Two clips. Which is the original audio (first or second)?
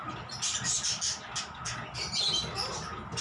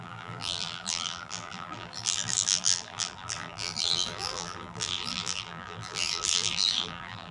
first